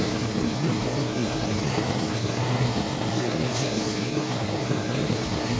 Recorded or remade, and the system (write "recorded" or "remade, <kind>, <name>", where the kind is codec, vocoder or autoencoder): remade, codec, SNAC